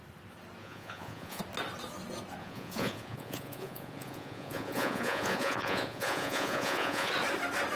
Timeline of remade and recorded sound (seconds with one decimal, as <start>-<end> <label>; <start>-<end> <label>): 0.0-0.6 recorded; 0.6-1.4 remade; 1.4-2.4 recorded; 2.4-7.1 remade; 7.1-7.8 recorded